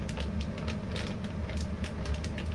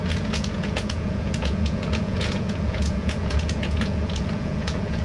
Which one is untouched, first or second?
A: first